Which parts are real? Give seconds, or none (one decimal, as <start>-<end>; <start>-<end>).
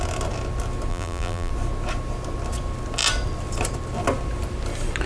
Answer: 0.0-0.9; 1.5-5.1